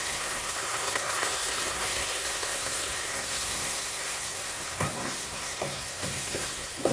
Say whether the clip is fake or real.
fake